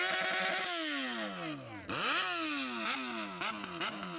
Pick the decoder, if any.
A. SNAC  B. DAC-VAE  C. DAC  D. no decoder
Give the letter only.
D